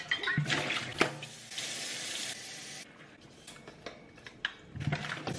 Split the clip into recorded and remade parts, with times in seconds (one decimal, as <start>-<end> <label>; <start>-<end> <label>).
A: 0.0-5.4 recorded